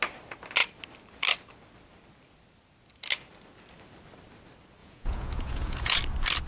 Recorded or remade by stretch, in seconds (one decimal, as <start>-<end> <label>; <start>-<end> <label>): 0.0-4.8 recorded; 4.8-6.0 remade; 6.0-6.5 recorded